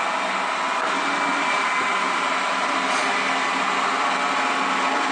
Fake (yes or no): no